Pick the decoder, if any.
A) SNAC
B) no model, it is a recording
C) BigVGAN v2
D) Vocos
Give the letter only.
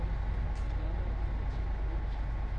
B